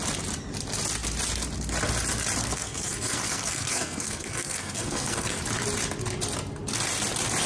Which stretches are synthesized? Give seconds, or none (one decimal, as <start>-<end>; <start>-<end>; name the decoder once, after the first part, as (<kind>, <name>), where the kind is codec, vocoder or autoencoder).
2.4-5.4 (codec, SNAC)